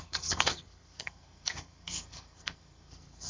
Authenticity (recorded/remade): remade